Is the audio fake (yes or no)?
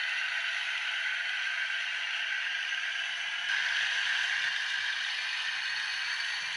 no